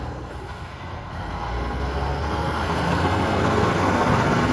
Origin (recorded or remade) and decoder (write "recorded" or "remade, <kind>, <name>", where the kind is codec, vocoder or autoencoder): remade, codec, SNAC